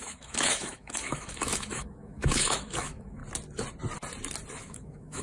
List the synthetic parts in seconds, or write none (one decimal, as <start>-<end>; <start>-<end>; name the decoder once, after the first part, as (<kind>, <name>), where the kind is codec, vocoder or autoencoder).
0.0-3.2 (autoencoder, DAC-VAE); 4.5-5.2